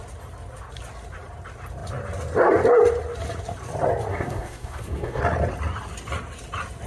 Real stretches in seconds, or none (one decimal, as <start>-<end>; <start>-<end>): 0.0-4.1; 5.2-6.9